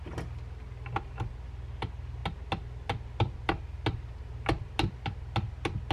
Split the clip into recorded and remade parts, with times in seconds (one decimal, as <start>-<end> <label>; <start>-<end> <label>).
0.0-5.9 recorded